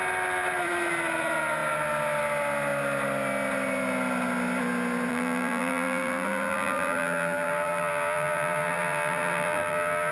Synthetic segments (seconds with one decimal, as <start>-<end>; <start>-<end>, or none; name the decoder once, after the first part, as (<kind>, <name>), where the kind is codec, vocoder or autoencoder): 5.1-10.1 (vocoder, BigVGAN v2)

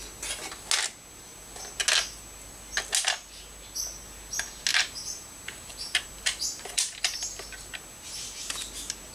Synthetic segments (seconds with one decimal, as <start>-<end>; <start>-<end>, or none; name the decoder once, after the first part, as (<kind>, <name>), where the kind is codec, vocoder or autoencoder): 4.7-7.2 (vocoder, BigVGAN v2)

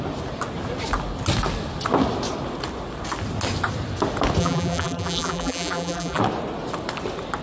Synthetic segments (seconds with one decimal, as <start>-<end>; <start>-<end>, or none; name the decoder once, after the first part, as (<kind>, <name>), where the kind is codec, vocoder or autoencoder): 4.4-6.2 (vocoder, BigVGAN v2)

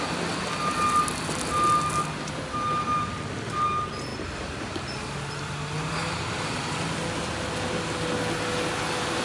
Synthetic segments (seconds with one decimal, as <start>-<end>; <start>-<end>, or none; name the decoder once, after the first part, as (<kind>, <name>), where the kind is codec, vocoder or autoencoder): none